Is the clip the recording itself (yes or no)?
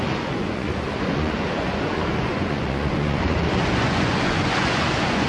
no